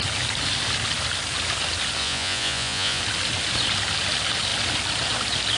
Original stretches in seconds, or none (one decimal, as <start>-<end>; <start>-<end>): 0.0-2.0; 3.0-5.6

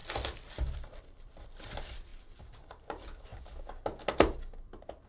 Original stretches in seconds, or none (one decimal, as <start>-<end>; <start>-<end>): 0.0-0.5; 3.3-5.1